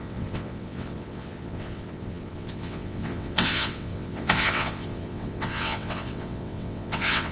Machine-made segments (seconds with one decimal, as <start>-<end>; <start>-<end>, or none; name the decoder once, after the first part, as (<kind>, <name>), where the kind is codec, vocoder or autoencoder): 0.0-7.3 (vocoder, WaveNeXt)